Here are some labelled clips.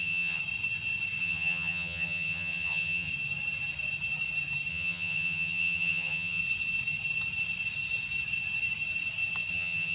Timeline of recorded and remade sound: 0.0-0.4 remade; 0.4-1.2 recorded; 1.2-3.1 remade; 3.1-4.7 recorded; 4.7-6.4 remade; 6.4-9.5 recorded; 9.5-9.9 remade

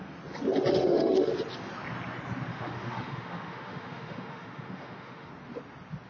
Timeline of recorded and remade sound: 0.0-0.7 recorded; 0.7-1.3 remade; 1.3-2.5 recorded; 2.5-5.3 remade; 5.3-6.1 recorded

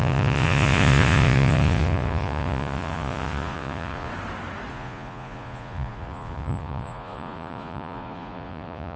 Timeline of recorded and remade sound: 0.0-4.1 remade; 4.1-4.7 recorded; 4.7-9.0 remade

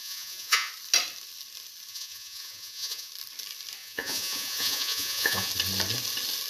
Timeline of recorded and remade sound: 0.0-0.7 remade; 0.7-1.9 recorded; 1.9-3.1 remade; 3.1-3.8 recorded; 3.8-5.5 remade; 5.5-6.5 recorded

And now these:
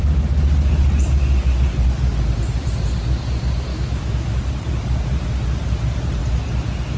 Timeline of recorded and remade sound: 0.0-3.7 recorded; 3.7-4.4 remade; 4.4-7.0 recorded

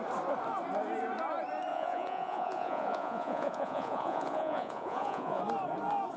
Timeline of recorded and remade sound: 0.0-1.7 recorded; 1.7-5.4 remade; 5.4-6.2 recorded

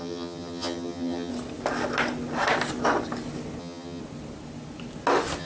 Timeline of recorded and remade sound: 0.0-1.3 remade; 1.3-3.6 recorded; 3.6-4.0 remade; 4.0-5.4 recorded

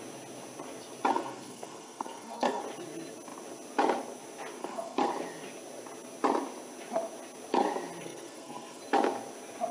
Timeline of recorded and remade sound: 0.0-1.1 recorded; 1.1-2.6 remade; 2.6-4.6 recorded; 4.6-5.1 remade; 5.1-8.0 recorded; 8.0-8.8 remade; 8.8-9.7 recorded